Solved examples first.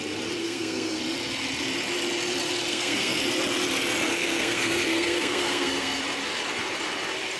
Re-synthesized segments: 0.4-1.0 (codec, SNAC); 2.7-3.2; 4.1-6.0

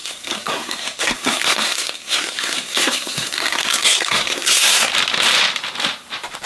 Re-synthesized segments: 0.0-4.9 (codec, SNAC)